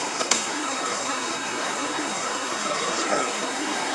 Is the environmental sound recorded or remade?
remade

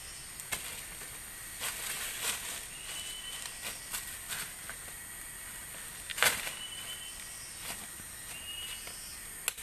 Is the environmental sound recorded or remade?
recorded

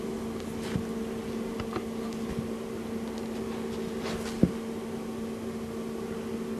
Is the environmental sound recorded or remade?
recorded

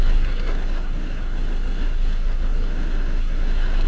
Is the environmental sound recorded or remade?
remade